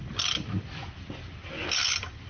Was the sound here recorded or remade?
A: recorded